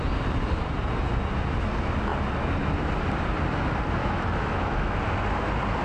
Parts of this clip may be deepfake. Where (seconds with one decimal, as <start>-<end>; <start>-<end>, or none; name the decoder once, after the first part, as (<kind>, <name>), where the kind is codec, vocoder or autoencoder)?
4.0-5.0 (autoencoder, DAC-VAE)